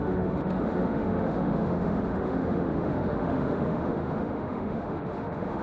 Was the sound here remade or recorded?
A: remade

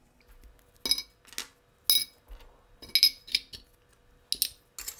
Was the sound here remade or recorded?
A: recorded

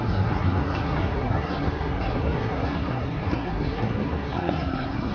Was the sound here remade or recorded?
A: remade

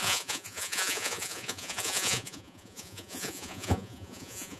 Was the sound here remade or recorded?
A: remade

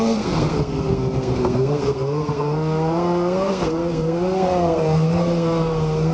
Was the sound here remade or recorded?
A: remade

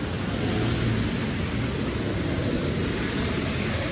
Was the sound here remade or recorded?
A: recorded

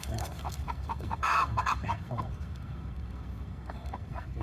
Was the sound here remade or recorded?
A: remade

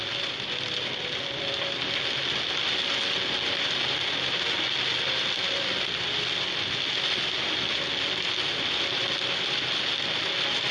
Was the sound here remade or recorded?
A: recorded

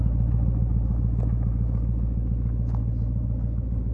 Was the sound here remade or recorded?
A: recorded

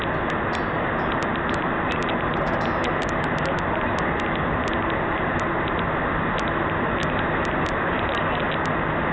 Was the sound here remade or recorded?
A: recorded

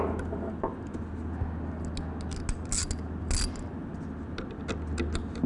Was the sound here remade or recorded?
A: recorded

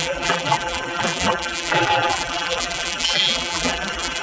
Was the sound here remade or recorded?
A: remade